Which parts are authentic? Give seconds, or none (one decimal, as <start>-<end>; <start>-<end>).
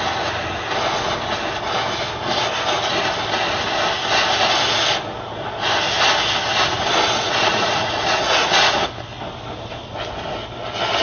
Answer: 0.0-7.5; 8.9-11.0